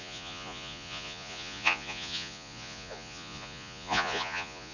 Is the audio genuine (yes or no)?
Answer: no